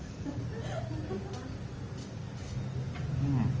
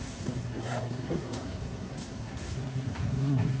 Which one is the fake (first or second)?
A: second